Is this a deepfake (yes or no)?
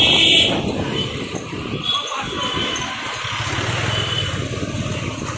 no